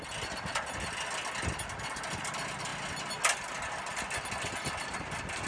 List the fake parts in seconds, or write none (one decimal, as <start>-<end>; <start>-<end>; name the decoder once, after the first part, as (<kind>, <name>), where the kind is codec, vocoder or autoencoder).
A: none

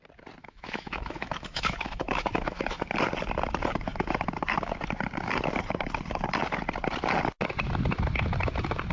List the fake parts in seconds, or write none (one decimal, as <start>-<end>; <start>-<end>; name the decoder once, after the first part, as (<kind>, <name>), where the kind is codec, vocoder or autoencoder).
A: 0.4-2.9 (autoencoder, DAC-VAE)

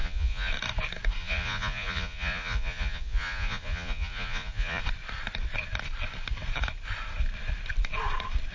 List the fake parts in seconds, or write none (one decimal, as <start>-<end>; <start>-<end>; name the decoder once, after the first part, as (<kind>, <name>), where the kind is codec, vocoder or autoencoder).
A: 0.0-0.5 (vocoder, Vocos); 1.2-4.8

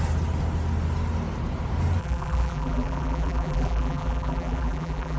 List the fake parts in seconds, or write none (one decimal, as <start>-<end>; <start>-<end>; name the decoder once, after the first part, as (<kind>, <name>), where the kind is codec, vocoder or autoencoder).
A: 2.0-5.2 (vocoder, BigVGAN v2)